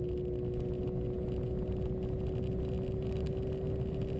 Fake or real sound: real